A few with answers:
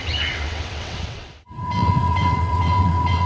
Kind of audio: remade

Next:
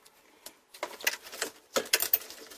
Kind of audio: recorded